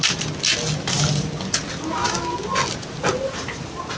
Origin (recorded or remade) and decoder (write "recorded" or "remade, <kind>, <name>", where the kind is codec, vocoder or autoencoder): recorded